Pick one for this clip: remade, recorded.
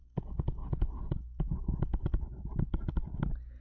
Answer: recorded